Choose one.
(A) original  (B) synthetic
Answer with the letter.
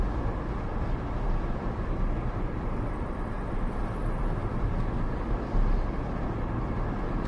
B